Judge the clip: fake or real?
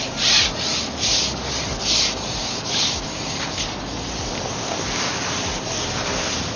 real